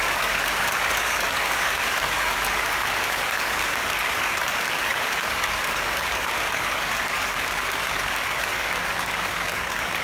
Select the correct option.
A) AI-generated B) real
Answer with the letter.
A